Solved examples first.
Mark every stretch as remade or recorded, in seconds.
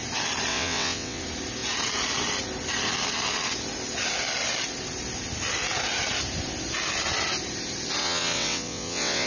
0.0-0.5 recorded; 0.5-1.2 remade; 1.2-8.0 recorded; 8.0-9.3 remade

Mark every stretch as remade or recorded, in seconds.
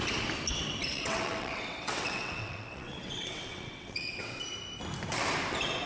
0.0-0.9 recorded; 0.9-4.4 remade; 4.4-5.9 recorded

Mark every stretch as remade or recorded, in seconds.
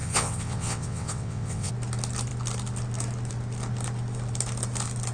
0.0-1.7 remade; 1.7-5.1 recorded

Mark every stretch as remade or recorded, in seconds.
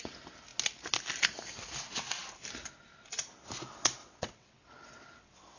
0.0-4.0 recorded; 4.0-5.6 remade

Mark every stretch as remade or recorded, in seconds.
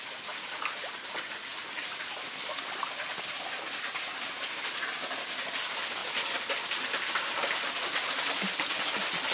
0.0-9.3 recorded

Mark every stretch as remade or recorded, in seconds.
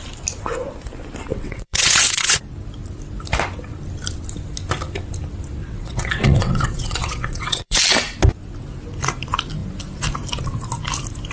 0.0-1.3 recorded; 1.3-2.4 remade; 2.4-5.6 recorded; 5.6-7.8 remade; 7.8-11.3 recorded